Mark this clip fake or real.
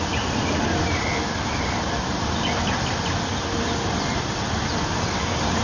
real